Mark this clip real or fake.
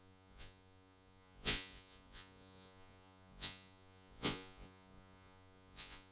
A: fake